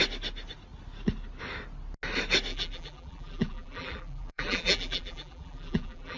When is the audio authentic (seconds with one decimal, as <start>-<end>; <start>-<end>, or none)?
0.0-2.5